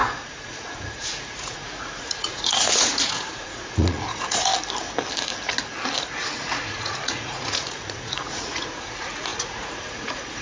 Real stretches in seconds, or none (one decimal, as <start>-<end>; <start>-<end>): 4.5-6.4